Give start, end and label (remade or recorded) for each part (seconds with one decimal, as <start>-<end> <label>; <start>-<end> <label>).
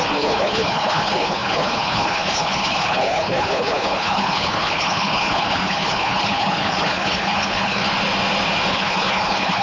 0.0-7.8 remade; 7.8-8.7 recorded; 8.7-9.6 remade